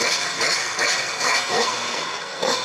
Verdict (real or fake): fake